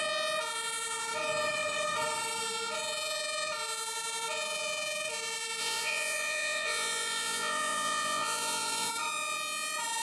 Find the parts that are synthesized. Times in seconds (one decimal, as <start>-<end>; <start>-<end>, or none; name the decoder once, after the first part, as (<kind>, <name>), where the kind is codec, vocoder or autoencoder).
5.6-8.9 (vocoder, Vocos)